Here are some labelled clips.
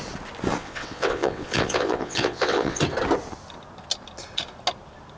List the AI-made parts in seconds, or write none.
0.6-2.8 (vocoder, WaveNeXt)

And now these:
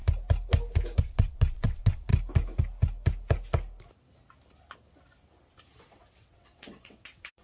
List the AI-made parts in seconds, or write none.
1.0-2.1 (vocoder, WaveNeXt); 5.9-7.4

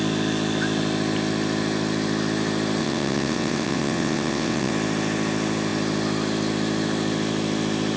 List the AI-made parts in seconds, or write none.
2.8-4.7 (vocoder, WaveNeXt)

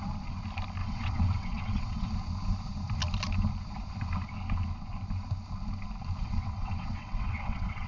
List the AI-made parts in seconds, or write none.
0.8-2.1 (vocoder, WaveNeXt); 6.2-7.9

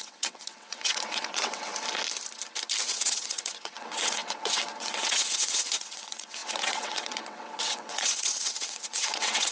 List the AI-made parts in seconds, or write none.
0.0-1.7 (vocoder, WaveNeXt); 2.8-9.5

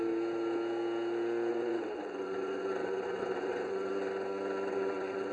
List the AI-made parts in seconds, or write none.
1.5-3.9 (vocoder, WaveNeXt); 4.7-5.3

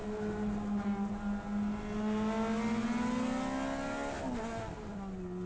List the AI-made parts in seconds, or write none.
none

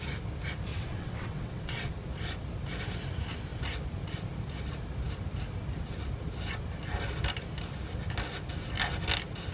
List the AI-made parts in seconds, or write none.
0.7-1.9 (vocoder, WaveNeXt)